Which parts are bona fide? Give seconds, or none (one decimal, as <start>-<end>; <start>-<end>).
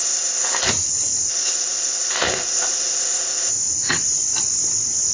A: 0.7-1.3; 3.5-5.1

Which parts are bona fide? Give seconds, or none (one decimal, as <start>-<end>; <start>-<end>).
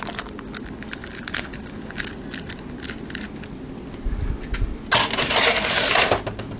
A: 0.0-6.6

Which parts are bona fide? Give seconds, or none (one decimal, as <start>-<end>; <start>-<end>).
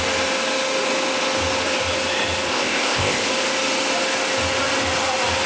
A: 0.0-2.5; 3.3-5.5